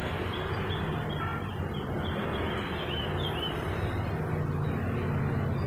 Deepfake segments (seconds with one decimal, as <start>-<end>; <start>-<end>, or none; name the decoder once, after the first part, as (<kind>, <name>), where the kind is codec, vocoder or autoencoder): none